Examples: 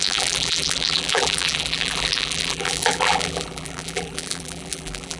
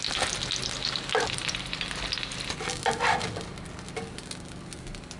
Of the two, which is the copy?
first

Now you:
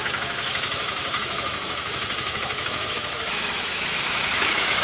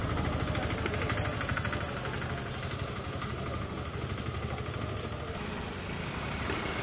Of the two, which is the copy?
first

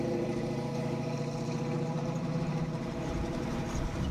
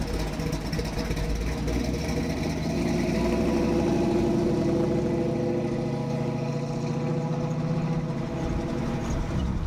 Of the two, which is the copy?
first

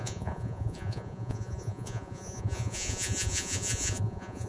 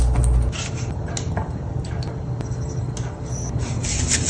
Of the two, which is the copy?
first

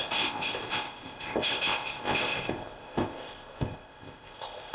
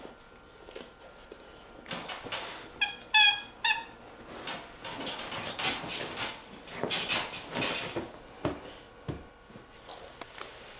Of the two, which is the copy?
first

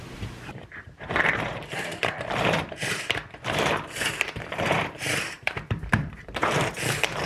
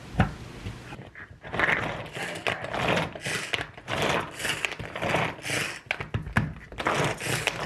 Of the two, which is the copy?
first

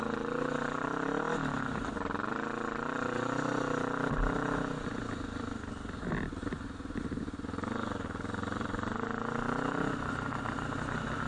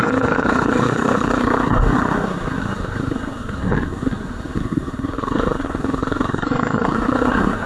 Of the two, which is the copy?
second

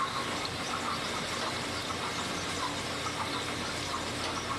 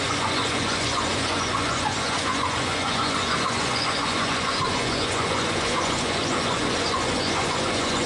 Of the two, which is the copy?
second